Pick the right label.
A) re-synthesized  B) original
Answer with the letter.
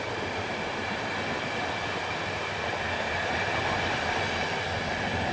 B